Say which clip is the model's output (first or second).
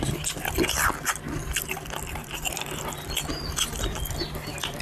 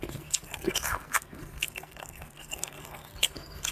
second